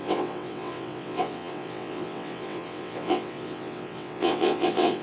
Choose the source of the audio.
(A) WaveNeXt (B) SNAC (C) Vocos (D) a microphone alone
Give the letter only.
A